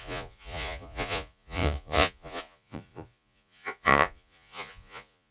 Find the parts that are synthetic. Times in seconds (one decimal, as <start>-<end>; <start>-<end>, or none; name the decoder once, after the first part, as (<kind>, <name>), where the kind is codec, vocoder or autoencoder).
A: 0.0-5.3 (vocoder, Vocos)